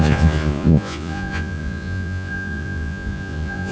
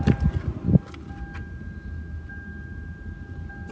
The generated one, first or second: first